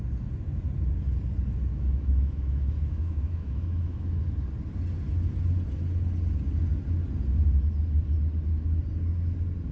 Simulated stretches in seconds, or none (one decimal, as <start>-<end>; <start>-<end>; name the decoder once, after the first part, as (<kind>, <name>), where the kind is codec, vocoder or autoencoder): 1.7-4.2 (autoencoder, DAC-VAE)

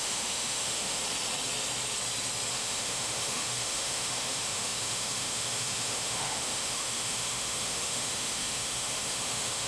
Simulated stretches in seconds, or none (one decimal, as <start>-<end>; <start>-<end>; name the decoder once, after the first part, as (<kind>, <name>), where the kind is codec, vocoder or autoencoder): 0.0-1.0 (autoencoder, DAC-VAE); 2.5-9.7